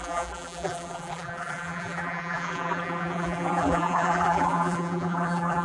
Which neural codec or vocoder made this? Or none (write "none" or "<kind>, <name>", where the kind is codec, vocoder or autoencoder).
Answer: vocoder, BigVGAN v2